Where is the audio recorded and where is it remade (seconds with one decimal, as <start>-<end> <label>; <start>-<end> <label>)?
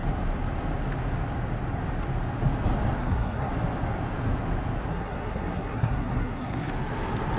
0.0-3.0 recorded; 3.0-3.5 remade; 3.5-4.9 recorded; 4.9-6.7 remade; 6.7-7.4 recorded